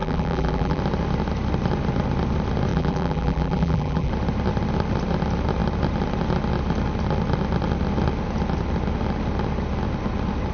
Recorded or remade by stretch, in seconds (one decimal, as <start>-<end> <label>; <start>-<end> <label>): 0.0-0.8 remade; 0.8-2.7 recorded; 2.7-4.1 remade; 4.1-10.5 recorded